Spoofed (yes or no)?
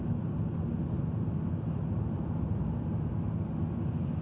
no